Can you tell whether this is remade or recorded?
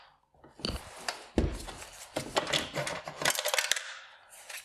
recorded